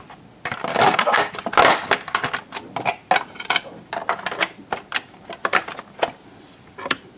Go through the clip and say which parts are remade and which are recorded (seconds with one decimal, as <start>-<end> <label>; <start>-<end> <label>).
0.0-0.7 recorded; 0.7-1.3 remade; 1.3-7.2 recorded